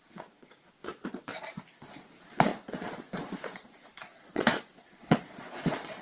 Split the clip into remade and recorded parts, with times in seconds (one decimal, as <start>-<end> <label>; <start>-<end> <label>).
0.0-1.3 remade; 1.3-1.8 recorded; 1.8-6.0 remade